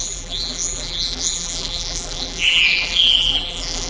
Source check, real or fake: fake